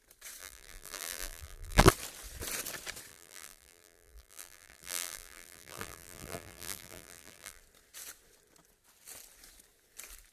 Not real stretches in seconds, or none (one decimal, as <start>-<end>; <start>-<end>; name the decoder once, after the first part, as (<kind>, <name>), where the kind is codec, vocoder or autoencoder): 0.4-1.9 (vocoder, BigVGAN v2); 3.1-7.6